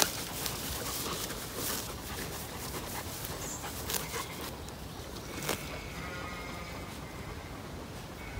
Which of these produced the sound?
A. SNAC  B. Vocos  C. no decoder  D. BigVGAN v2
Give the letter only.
C